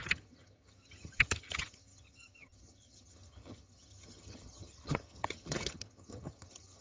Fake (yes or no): yes